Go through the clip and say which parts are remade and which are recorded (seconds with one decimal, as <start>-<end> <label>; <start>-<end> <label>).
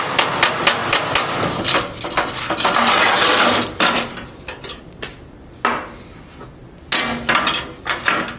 0.0-0.8 recorded; 0.8-5.2 remade; 5.2-8.4 recorded